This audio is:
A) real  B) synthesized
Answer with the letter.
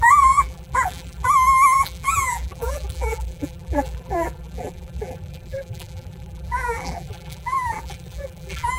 B